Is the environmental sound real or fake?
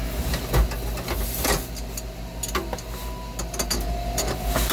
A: real